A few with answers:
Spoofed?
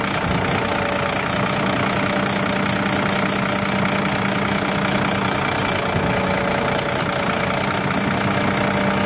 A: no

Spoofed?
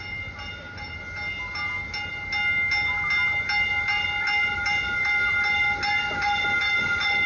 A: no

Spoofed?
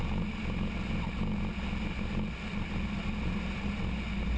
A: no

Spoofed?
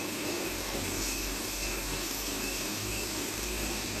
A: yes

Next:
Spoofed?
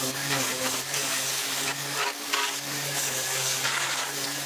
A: yes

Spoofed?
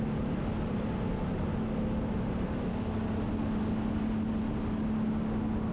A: no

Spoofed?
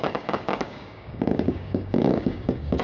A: yes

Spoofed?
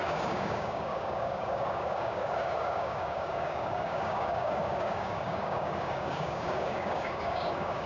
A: yes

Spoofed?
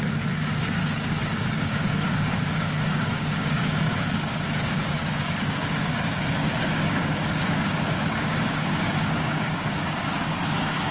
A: yes